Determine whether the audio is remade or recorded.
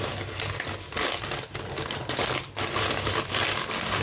recorded